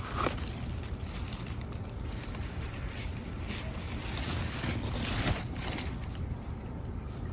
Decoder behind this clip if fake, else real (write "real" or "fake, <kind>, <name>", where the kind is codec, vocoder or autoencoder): real